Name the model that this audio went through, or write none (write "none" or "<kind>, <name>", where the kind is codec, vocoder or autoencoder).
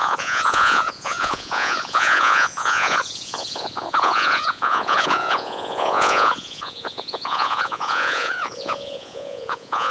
vocoder, Vocos